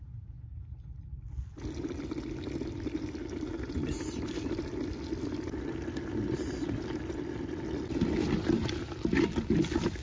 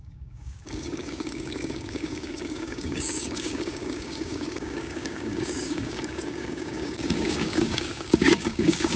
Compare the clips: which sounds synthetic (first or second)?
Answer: second